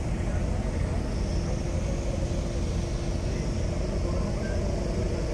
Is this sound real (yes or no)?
yes